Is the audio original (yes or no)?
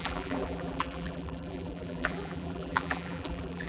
no